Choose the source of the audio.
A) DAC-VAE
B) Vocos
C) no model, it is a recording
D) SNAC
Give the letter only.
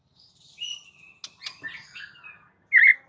C